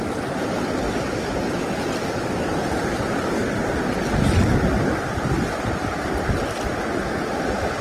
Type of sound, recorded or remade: recorded